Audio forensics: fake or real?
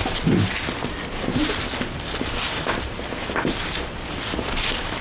real